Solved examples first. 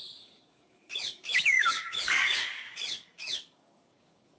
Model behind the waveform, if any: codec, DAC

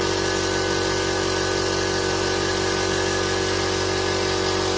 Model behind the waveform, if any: none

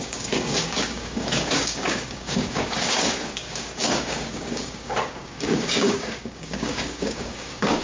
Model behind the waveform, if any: codec, DAC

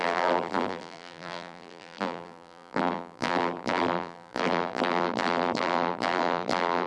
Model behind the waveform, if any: vocoder, BigVGAN v2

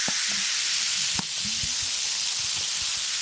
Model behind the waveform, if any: none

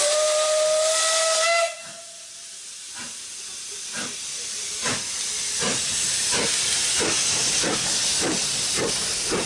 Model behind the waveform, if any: none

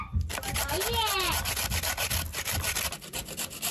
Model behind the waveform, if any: none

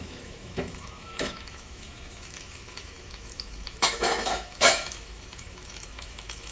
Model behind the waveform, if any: autoencoder, DAC-VAE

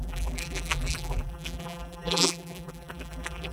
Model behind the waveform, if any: vocoder, BigVGAN v2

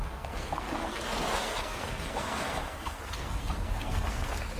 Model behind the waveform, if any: codec, SNAC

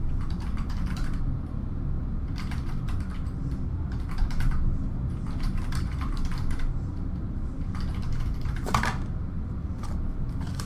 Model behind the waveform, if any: vocoder, BigVGAN v2